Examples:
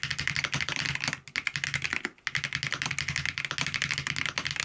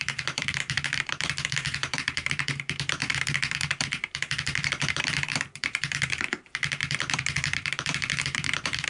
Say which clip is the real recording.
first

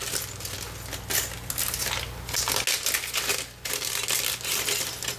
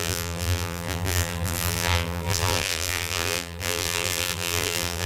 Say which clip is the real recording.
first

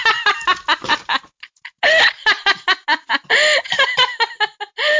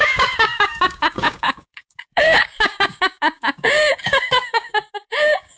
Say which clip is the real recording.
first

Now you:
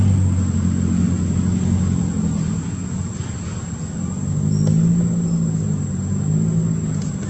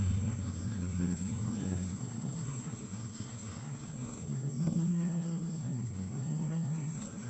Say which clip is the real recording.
first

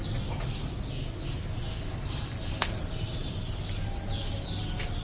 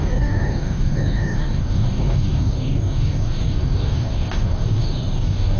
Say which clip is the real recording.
first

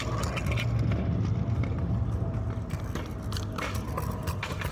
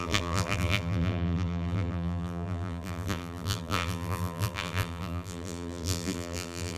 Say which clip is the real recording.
first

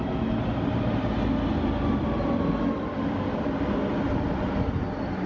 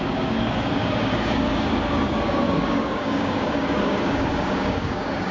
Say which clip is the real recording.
first